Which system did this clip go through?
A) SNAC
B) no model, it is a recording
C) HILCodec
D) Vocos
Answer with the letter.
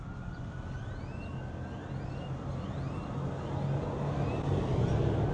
B